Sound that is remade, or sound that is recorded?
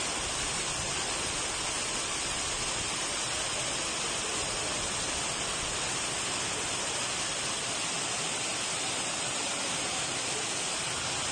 recorded